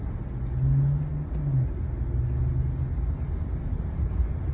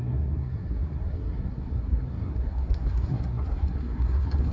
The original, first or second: first